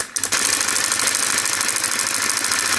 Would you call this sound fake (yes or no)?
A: no